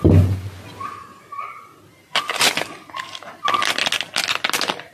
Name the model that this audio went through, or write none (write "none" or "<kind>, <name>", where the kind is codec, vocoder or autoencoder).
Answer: none